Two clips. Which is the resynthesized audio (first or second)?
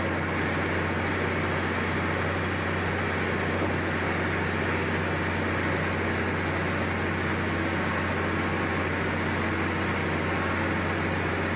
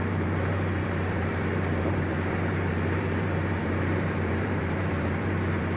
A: second